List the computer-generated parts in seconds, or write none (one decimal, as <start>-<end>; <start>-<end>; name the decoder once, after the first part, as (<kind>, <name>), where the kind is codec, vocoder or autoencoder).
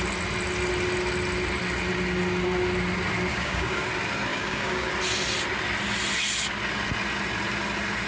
3.3-3.9 (codec, DAC); 4.3-4.9